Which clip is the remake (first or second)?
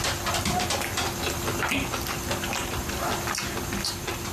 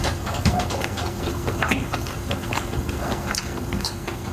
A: second